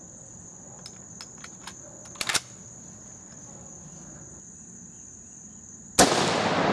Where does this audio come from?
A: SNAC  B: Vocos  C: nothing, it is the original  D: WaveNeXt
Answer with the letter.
C